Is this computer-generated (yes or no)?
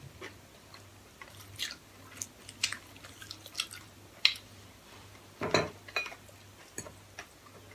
no